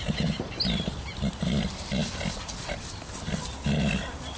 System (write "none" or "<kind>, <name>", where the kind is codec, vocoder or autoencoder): none